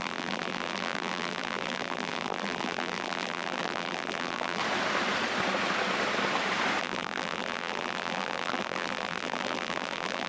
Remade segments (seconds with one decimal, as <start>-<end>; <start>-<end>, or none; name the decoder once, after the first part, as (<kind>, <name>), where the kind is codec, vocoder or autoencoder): 0.0-4.6 (vocoder, BigVGAN v2); 6.8-10.3